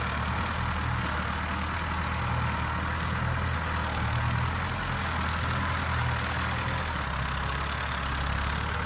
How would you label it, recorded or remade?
recorded